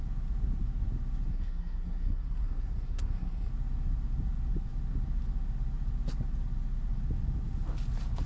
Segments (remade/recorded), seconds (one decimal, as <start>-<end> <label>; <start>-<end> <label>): 0.0-1.3 recorded; 1.3-3.5 remade; 3.5-8.3 recorded